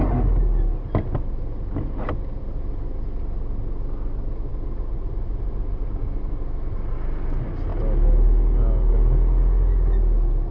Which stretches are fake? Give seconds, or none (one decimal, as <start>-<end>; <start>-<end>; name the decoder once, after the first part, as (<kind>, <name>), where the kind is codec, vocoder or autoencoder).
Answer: none